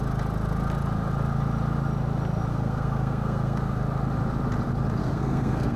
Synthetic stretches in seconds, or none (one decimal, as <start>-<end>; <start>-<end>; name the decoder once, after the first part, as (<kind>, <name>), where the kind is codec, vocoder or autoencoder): 2.5-3.8 (codec, SNAC); 5.0-5.8